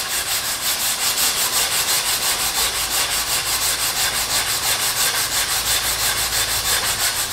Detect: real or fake real